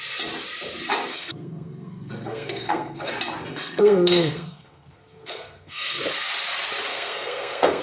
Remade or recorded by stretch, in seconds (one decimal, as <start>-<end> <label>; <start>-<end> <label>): 0.0-1.1 recorded; 1.1-3.1 remade; 3.1-3.5 recorded; 3.5-6.0 remade; 6.0-6.9 recorded; 6.9-7.8 remade